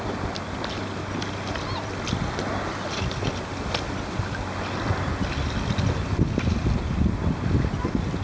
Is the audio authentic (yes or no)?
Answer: yes